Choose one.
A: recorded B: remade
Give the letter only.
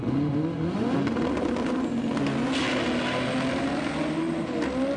A